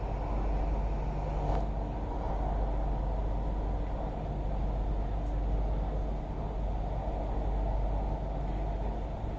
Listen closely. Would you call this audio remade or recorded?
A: recorded